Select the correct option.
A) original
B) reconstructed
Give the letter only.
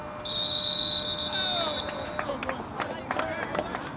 A